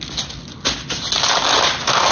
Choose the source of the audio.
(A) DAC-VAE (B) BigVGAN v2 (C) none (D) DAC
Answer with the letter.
C